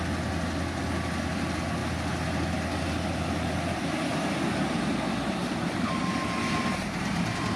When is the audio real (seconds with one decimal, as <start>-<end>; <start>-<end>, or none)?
0.0-6.0